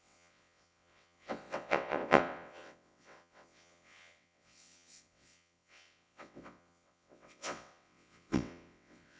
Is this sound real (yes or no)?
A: no